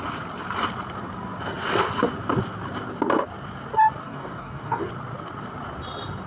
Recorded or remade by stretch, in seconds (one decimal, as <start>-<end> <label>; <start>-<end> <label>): 0.0-4.0 recorded; 4.0-4.9 remade; 4.9-6.3 recorded